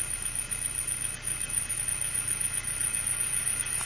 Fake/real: real